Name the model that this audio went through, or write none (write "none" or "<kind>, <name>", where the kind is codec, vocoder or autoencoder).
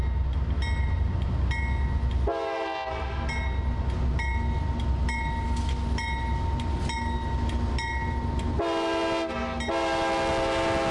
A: none